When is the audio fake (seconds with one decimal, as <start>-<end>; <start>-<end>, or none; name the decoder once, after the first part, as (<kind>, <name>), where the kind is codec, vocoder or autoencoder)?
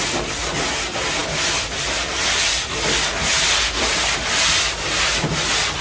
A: none